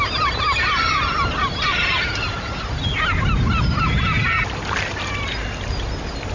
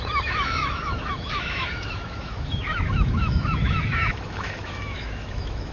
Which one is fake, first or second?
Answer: second